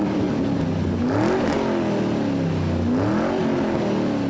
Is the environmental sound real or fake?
real